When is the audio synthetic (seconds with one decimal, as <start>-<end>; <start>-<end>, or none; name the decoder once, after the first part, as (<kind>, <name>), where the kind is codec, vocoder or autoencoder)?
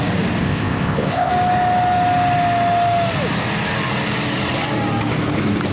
0.4-1.3 (codec, ZipCodec)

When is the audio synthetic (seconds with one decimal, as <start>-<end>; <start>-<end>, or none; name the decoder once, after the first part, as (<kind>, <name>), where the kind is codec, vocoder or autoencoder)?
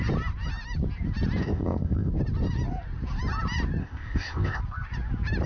1.4-2.1 (codec, ZipCodec); 3.8-4.6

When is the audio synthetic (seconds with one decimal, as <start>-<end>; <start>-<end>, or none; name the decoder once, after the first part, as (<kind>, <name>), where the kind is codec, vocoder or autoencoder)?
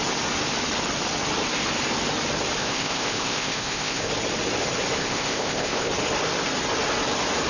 2.6-4.1 (codec, ZipCodec); 5.0-5.9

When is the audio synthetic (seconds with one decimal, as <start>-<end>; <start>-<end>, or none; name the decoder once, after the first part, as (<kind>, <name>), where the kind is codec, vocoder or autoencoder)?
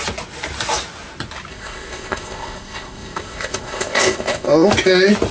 1.5-4.7 (codec, ZipCodec)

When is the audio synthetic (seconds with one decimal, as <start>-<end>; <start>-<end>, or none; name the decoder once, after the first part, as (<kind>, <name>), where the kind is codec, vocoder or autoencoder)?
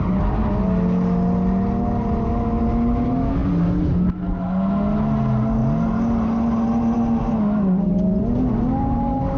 none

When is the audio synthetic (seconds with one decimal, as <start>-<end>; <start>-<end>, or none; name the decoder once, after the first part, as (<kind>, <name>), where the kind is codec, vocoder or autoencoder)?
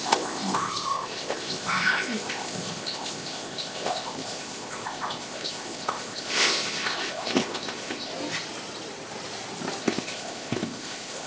0.0-8.1 (codec, ZipCodec); 9.8-11.3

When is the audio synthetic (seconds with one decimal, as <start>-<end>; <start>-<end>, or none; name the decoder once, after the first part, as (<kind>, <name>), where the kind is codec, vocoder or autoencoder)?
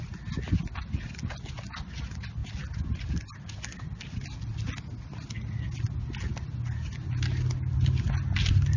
none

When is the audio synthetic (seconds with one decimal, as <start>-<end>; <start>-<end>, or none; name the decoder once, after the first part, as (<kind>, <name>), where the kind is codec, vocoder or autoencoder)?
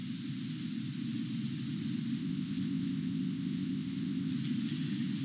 2.2-4.3 (codec, ZipCodec)